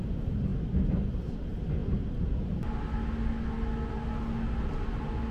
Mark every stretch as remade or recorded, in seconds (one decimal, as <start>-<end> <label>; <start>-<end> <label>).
0.0-5.3 recorded